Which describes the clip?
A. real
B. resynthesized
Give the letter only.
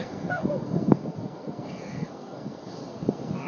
B